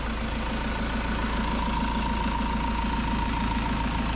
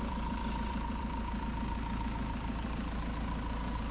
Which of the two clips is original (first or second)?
first